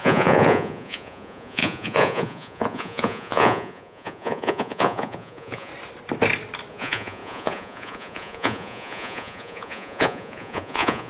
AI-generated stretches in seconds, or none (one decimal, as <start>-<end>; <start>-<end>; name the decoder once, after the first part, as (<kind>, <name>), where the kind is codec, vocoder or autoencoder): 0.0-5.7 (vocoder, Vocos); 6.7-11.1